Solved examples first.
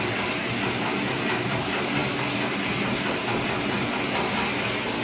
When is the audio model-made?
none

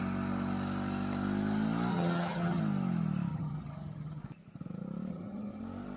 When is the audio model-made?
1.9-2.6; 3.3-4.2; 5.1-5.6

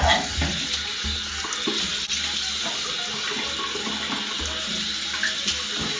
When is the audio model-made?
none